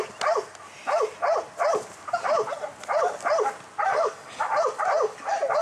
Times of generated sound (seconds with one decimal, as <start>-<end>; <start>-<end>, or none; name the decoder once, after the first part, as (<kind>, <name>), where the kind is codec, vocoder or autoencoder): 3.9-4.5 (codec, DAC)